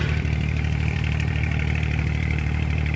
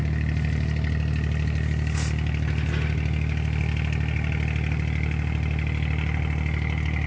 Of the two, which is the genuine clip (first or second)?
second